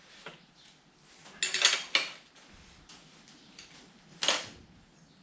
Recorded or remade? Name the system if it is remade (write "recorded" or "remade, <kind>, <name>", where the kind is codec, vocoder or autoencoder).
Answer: recorded